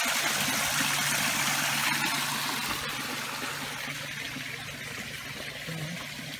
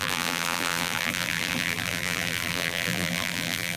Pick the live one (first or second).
first